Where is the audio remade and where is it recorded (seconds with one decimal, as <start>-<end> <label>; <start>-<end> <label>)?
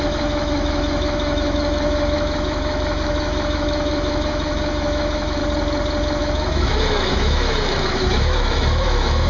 0.0-5.4 remade; 5.4-6.2 recorded; 6.2-9.3 remade